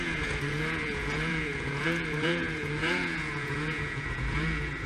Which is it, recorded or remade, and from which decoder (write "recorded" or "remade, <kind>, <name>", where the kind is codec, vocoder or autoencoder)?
remade, vocoder, Vocos